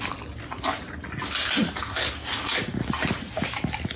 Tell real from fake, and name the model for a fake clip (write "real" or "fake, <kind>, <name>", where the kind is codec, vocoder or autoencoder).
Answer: real